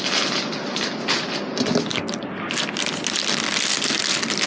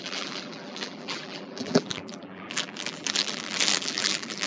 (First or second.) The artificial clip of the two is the second